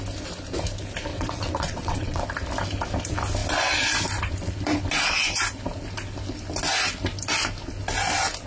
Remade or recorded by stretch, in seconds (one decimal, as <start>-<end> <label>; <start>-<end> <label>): 0.0-1.1 recorded; 1.1-2.2 remade; 2.2-8.5 recorded